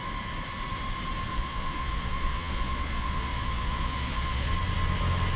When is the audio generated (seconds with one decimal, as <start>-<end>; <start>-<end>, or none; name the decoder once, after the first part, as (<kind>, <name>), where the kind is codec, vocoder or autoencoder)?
1.3-4.5 (vocoder, Vocos)